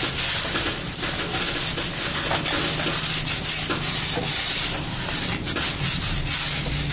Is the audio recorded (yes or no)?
yes